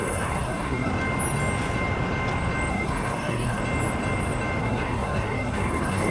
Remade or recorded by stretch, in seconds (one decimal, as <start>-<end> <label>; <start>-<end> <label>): 0.0-0.9 remade; 0.9-2.7 recorded; 2.7-3.6 remade; 3.6-4.6 recorded; 4.6-6.1 remade